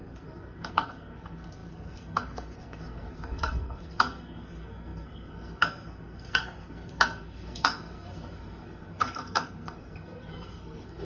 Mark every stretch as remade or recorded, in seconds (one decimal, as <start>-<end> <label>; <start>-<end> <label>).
0.0-11.0 remade